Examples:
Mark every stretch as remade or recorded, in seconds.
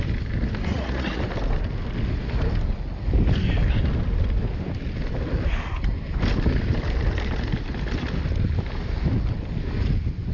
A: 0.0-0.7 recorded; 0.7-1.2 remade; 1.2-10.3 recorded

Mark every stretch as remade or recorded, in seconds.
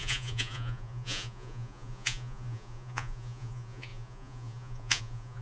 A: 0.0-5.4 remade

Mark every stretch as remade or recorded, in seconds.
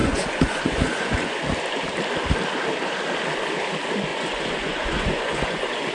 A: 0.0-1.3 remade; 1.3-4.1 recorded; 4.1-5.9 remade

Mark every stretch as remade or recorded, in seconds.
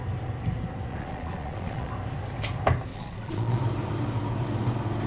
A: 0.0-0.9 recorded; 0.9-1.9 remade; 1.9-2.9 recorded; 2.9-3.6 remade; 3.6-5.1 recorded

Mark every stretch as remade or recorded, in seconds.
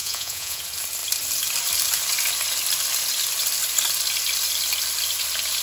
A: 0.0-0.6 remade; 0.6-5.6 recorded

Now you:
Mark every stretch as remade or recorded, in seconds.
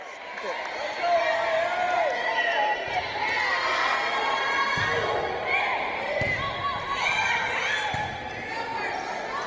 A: 0.0-3.8 recorded; 3.8-4.8 remade; 4.8-9.5 recorded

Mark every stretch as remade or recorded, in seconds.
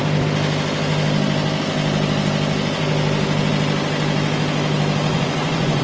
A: 0.0-5.1 recorded; 5.1-5.8 remade